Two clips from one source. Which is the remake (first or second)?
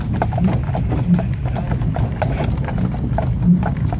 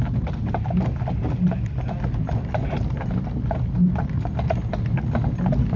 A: first